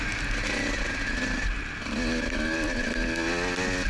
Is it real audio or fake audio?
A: real